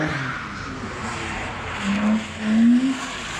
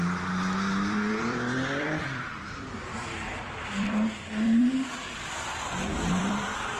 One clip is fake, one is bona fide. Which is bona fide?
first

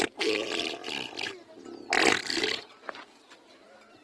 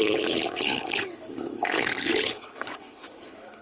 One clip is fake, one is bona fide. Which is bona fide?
first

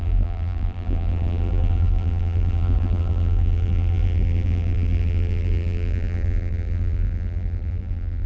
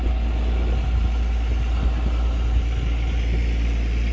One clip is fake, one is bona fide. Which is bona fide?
second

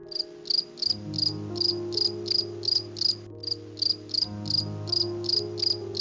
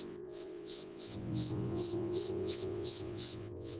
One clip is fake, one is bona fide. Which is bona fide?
first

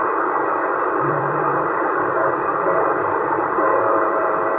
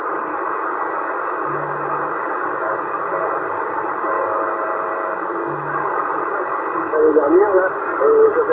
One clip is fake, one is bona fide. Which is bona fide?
second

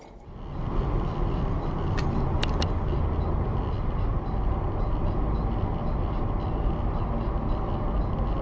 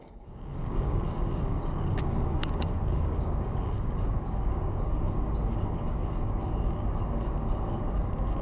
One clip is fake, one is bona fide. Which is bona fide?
first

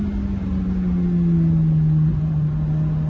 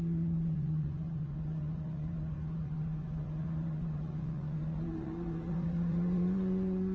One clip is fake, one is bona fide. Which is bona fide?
first